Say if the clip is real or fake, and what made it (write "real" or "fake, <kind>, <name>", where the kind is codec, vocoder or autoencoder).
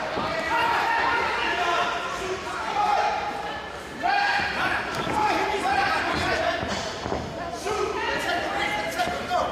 fake, vocoder, BigVGAN v2